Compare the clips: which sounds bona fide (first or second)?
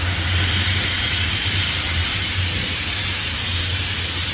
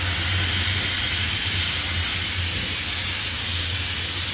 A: second